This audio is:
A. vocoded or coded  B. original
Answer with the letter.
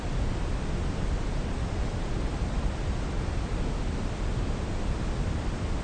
B